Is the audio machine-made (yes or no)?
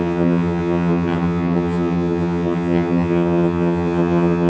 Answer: yes